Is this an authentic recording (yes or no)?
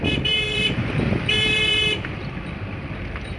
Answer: no